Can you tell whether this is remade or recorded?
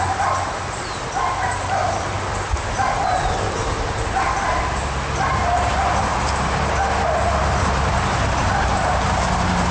recorded